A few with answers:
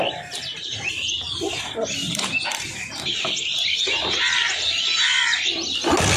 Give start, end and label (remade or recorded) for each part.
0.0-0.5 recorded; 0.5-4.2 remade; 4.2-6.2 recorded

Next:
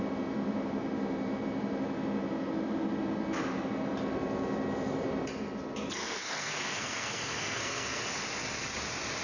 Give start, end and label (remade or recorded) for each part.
0.0-6.0 recorded; 6.0-8.0 remade; 8.0-9.2 recorded

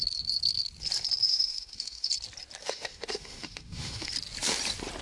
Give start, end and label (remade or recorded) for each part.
0.0-1.3 recorded; 1.3-2.1 remade; 2.1-2.6 recorded; 2.6-4.1 remade; 4.1-5.0 recorded

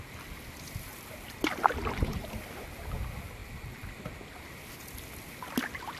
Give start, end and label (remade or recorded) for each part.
0.0-6.0 recorded

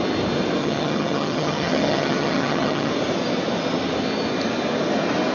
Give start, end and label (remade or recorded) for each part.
0.0-0.6 recorded; 0.6-2.9 remade; 2.9-5.3 recorded

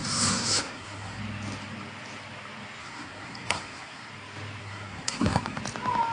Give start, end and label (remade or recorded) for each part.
0.0-1.2 remade; 1.2-2.8 recorded; 2.8-4.1 remade; 4.1-4.6 recorded; 4.6-5.6 remade; 5.6-6.1 recorded

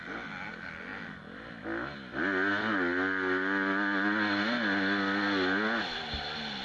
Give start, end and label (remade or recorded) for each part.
0.0-6.6 recorded